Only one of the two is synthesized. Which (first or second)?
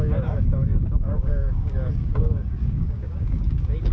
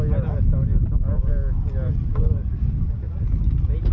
first